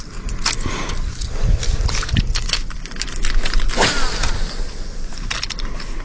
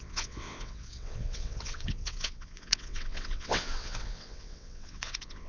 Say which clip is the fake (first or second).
second